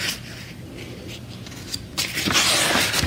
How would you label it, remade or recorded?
recorded